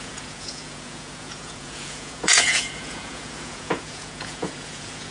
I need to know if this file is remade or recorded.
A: remade